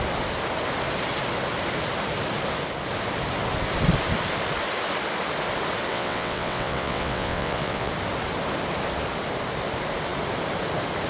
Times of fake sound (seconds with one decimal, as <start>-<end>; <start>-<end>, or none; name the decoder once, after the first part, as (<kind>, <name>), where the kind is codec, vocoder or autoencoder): 5.9-7.9 (vocoder, WaveNeXt)